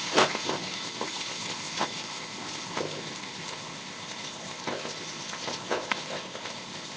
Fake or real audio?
fake